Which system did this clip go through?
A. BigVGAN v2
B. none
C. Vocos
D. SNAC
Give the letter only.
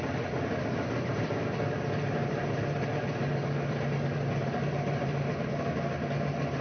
B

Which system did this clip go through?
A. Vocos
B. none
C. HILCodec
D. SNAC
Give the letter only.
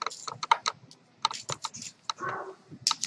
B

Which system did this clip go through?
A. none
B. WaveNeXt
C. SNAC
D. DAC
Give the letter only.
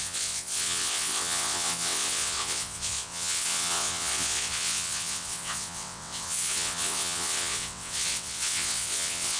B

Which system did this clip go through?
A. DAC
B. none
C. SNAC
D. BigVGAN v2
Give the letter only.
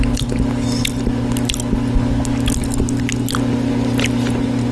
B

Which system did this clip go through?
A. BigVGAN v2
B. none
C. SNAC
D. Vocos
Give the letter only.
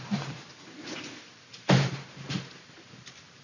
A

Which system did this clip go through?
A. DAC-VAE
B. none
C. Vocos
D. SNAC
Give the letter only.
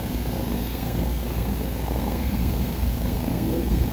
D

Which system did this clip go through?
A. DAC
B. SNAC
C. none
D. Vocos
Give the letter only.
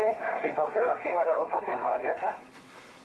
B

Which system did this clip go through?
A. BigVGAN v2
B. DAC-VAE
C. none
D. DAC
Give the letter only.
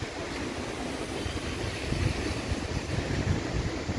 C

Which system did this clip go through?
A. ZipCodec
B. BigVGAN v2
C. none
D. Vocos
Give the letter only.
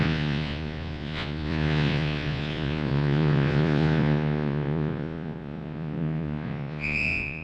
D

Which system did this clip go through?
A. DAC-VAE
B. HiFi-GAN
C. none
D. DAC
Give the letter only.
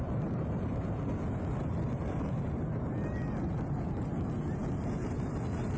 C